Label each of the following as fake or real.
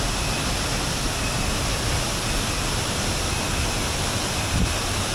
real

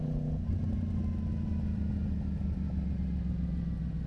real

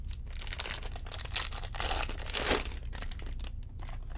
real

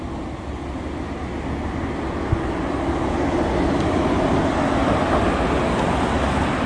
real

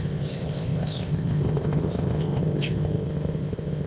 fake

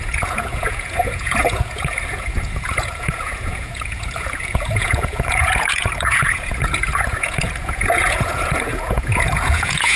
fake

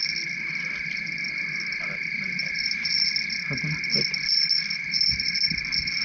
real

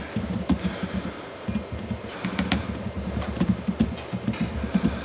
real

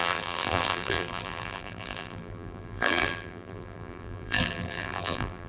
fake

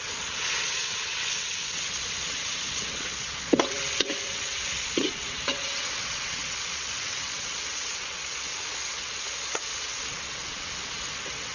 fake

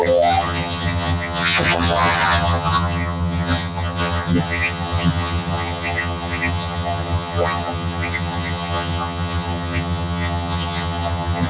fake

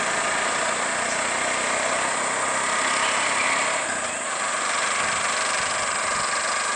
real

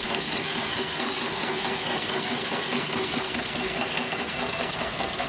fake